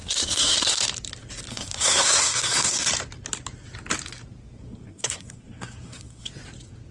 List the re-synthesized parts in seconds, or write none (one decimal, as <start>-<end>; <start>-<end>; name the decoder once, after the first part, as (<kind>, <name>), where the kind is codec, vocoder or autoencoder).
0.0-0.8 (codec, SNAC); 1.5-2.9; 4.6-6.3